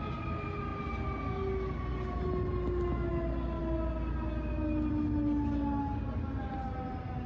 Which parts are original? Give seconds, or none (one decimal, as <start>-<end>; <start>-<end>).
0.0-7.3

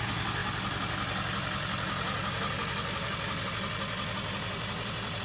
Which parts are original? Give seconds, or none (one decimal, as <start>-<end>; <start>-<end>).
0.0-5.2

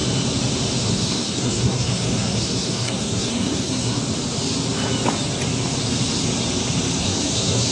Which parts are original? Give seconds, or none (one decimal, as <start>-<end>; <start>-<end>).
0.0-0.8; 4.0-7.0

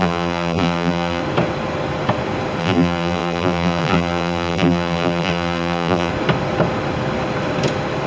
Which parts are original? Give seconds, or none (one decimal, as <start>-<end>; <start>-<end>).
1.2-2.6; 6.1-8.1